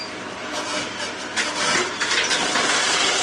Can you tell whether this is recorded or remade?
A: remade